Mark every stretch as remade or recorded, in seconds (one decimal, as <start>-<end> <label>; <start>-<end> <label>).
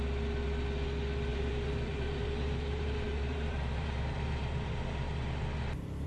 0.0-1.3 recorded; 1.3-5.0 remade; 5.0-6.1 recorded